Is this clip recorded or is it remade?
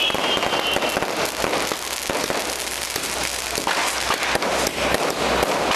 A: recorded